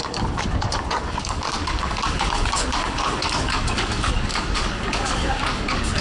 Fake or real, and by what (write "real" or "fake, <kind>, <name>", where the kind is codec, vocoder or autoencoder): fake, codec, DAC